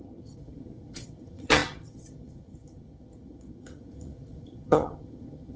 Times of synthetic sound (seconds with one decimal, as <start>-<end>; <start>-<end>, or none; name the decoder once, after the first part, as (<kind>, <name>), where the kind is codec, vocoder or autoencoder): 0.0-5.6 (vocoder, HiFi-GAN)